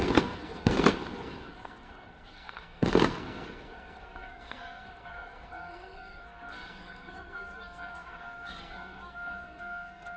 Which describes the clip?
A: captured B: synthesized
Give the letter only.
B